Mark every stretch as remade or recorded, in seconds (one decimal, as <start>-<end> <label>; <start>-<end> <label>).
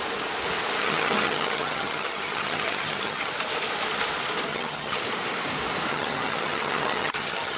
0.0-0.8 recorded; 0.8-3.3 remade; 3.3-4.5 recorded; 4.5-5.0 remade; 5.0-5.9 recorded; 5.9-7.6 remade